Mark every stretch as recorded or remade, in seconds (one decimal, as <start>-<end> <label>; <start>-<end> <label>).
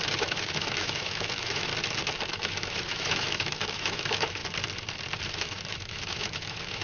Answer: 0.0-1.7 remade; 1.7-2.3 recorded; 2.3-4.4 remade; 4.4-5.4 recorded; 5.4-6.8 remade